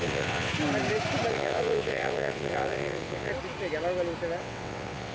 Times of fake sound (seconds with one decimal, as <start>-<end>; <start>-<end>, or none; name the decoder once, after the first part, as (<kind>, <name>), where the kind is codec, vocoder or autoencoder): 0.0-0.5 (vocoder, WaveNeXt); 1.3-3.3; 4.4-5.1